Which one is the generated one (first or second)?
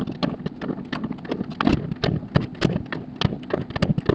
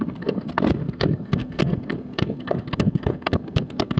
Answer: second